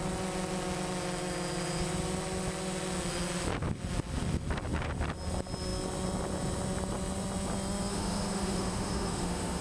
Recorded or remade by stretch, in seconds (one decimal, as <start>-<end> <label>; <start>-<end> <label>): 0.0-7.9 recorded; 7.9-9.6 remade